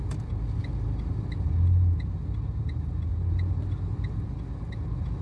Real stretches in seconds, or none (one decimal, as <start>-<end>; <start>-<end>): 0.0-5.2